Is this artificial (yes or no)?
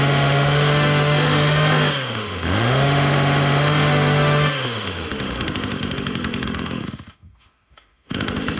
yes